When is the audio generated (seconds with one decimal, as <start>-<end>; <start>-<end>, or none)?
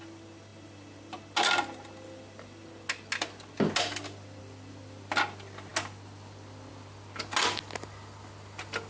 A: none